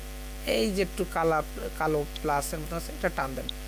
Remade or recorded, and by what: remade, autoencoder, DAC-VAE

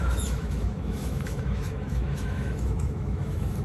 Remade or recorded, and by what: remade, autoencoder, DAC-VAE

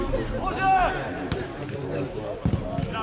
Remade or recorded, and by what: recorded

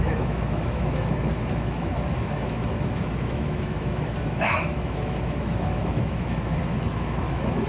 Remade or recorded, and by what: remade, autoencoder, DAC-VAE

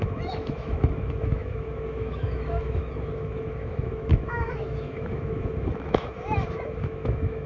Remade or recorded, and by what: remade, autoencoder, DAC-VAE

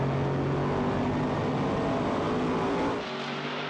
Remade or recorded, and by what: recorded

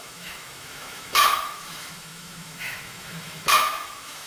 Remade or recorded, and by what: remade, autoencoder, DAC-VAE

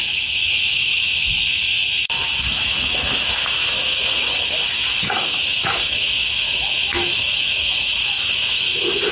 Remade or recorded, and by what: remade, autoencoder, DAC-VAE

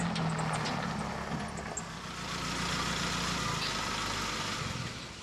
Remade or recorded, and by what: recorded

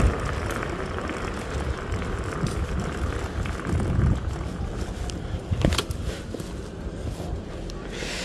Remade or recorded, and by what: recorded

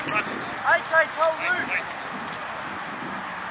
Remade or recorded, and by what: recorded